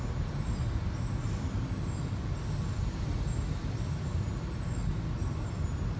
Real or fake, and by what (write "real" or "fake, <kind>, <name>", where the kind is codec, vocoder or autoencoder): real